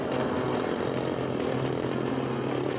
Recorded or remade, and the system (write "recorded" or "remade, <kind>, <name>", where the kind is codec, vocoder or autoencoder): recorded